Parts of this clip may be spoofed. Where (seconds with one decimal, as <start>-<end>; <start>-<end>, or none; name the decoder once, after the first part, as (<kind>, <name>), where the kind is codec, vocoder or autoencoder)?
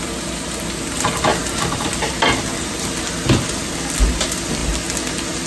none